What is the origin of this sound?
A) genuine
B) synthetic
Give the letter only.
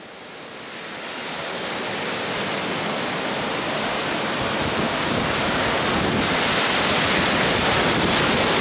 A